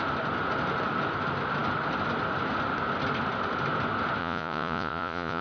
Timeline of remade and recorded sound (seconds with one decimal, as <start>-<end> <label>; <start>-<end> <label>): 0.0-4.2 recorded; 4.2-5.4 remade